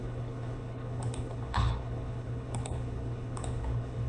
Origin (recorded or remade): remade